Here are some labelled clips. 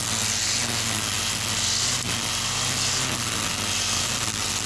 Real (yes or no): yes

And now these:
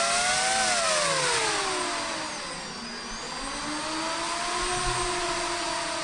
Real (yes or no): yes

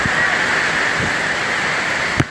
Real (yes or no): yes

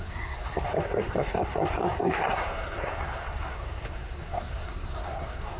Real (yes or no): no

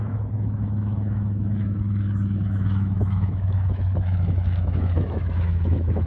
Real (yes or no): no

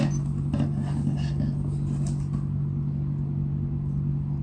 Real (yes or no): yes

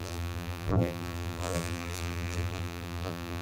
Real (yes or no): no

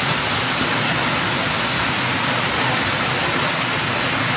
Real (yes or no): yes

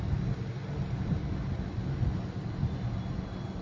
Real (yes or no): yes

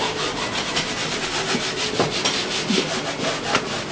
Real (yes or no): yes